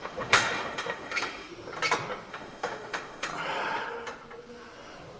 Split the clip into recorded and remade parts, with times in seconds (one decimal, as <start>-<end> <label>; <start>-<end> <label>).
0.0-1.5 remade; 1.5-2.3 recorded; 2.3-3.3 remade; 3.3-5.2 recorded